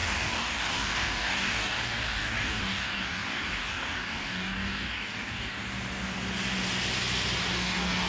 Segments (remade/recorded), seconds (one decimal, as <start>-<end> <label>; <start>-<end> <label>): 0.0-5.6 remade; 5.6-7.5 recorded; 7.5-8.1 remade